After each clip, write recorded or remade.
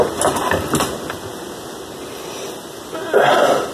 recorded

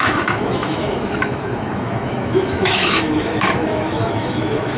remade